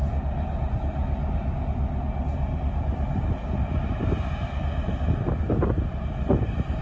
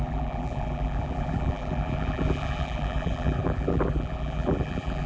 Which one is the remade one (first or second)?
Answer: second